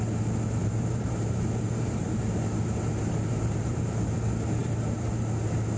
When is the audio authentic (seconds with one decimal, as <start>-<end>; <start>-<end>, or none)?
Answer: 0.0-0.6; 3.9-4.6; 5.2-5.8